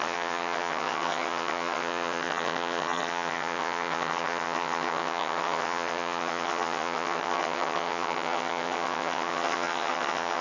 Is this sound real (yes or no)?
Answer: no